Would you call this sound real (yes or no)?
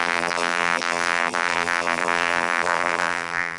no